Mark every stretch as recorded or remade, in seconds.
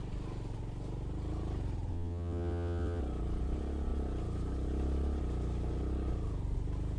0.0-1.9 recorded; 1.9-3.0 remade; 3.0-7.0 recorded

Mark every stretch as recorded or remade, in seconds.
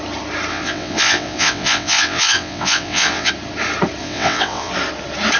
0.0-0.5 recorded; 0.5-3.3 remade; 3.3-4.0 recorded; 4.0-4.7 remade; 4.7-5.4 recorded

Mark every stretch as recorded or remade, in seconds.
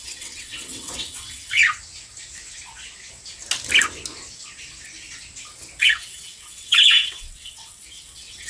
0.0-1.6 remade; 1.6-5.8 recorded; 5.8-8.5 remade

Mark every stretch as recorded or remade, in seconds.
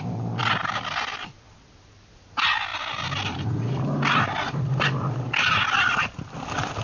0.0-6.8 recorded